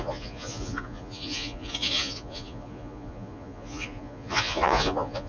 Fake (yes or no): yes